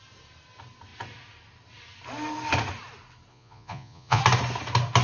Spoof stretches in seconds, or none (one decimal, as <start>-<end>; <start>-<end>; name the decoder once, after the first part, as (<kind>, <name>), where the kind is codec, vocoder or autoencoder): 3.3-4.2 (vocoder, Vocos)